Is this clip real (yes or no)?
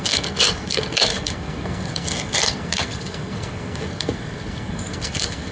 no